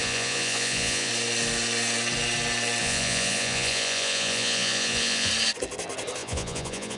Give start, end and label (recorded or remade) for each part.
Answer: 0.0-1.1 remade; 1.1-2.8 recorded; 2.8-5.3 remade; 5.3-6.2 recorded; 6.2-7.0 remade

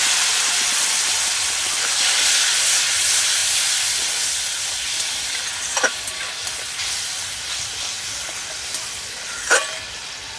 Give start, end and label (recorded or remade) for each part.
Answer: 0.0-10.4 recorded

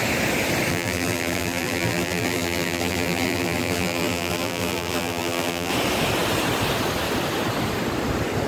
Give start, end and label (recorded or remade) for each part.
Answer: 0.0-0.7 recorded; 0.7-5.7 remade; 5.7-8.5 recorded

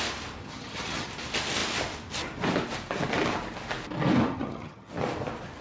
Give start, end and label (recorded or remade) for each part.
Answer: 0.0-0.4 recorded; 0.4-1.1 remade; 1.1-4.3 recorded; 4.3-4.9 remade; 4.9-5.6 recorded